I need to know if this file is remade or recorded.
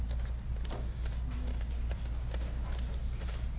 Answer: recorded